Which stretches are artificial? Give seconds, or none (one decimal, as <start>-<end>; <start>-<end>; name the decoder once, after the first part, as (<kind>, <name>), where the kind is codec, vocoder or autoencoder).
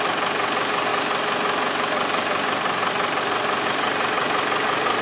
none